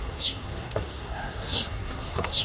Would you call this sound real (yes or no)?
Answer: no